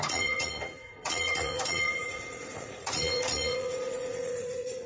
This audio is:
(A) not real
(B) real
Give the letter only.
A